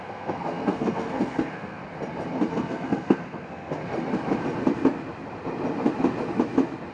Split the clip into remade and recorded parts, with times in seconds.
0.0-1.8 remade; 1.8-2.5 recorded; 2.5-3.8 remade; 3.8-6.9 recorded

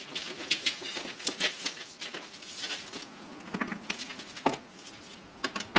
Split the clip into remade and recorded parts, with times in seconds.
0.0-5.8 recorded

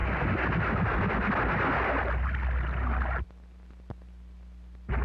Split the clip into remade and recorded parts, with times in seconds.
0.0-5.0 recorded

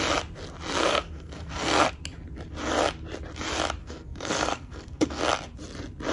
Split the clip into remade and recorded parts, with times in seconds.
0.0-0.8 recorded; 0.8-1.9 remade; 1.9-3.8 recorded; 3.8-5.2 remade; 5.2-6.1 recorded